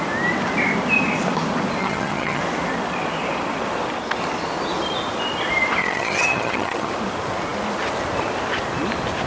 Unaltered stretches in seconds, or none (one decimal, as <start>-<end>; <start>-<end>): 0.0-1.8; 2.4-5.8; 6.9-9.3